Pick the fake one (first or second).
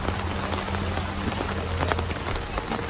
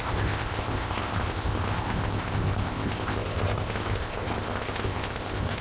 second